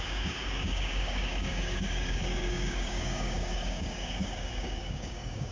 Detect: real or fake fake